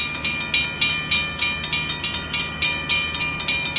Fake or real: real